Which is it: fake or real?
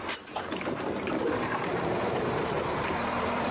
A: fake